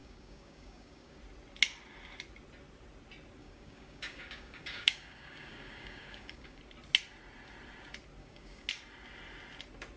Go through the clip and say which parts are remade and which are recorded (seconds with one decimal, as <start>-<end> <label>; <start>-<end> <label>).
0.0-1.2 remade; 1.2-3.4 recorded; 3.4-6.6 remade; 6.6-8.2 recorded; 8.2-8.7 remade; 8.7-10.0 recorded